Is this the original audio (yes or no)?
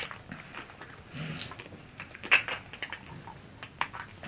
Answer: yes